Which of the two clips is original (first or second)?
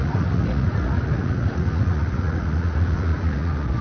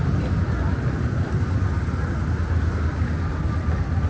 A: second